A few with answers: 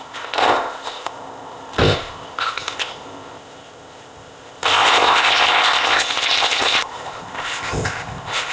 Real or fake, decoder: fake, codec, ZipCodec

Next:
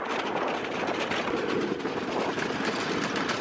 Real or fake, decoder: real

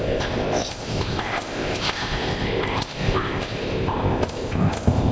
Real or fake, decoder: fake, codec, ZipCodec